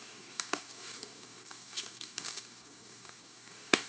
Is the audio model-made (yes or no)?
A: yes